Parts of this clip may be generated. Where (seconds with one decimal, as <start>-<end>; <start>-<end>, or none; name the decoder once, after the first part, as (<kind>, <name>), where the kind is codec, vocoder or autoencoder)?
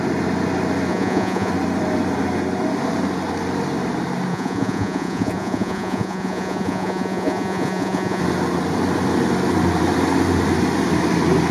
0.9-1.5 (vocoder, Vocos); 4.3-8.2